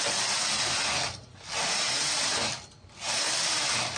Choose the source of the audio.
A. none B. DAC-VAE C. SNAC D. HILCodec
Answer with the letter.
A